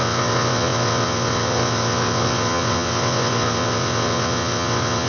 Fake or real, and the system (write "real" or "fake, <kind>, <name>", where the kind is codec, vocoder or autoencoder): fake, vocoder, WaveNeXt